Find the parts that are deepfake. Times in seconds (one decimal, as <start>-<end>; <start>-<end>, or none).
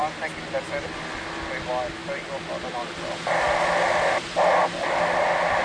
none